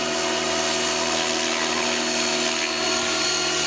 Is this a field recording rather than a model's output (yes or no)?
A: yes